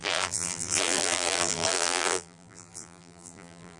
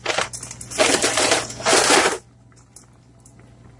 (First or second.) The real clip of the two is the second